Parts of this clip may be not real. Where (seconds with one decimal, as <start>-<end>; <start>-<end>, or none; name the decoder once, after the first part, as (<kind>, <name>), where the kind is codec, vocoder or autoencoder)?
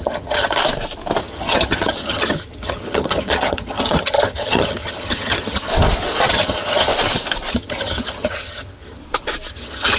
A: 0.0-0.6 (vocoder, HiFi-GAN); 1.2-5.7; 6.3-6.9; 7.5-9.0; 9.5-10.0